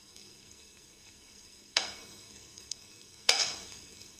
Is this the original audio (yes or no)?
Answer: no